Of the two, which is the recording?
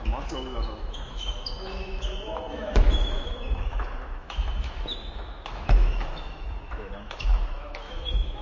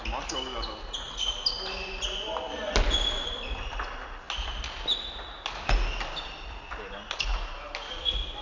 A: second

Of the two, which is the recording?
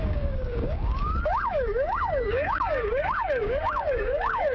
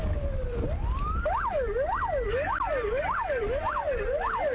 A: second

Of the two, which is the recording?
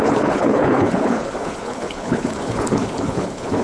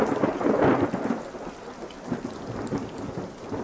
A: second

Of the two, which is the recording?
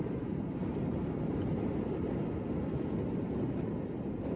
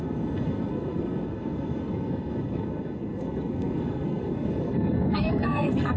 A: first